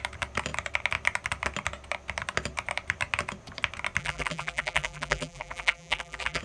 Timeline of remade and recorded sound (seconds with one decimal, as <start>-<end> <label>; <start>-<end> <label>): 0.0-4.0 recorded; 4.0-6.4 remade